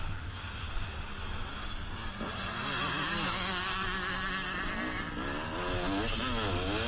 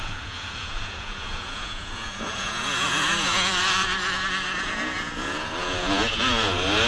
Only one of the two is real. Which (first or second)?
first